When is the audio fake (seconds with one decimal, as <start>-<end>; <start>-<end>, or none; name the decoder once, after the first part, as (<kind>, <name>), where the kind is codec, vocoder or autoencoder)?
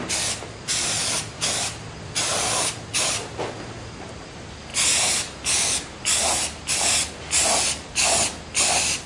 none